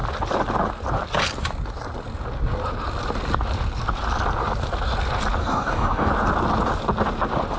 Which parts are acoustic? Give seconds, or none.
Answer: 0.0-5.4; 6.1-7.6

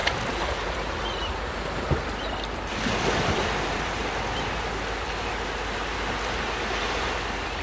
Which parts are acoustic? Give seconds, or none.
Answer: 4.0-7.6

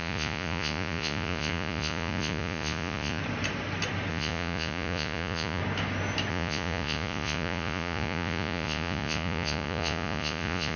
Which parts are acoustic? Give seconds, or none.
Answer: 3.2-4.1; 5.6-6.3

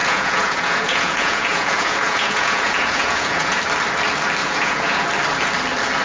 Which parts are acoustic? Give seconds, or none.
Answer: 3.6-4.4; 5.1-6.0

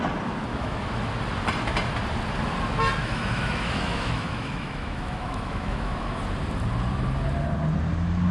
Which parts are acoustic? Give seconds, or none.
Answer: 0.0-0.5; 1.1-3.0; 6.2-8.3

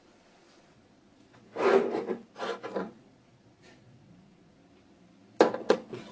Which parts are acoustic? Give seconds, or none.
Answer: 1.5-2.8; 4.6-5.6

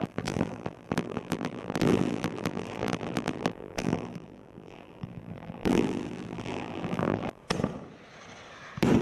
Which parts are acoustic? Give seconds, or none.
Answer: 7.4-9.0